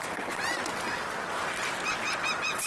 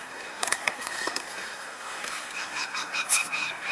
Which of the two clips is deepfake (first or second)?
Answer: second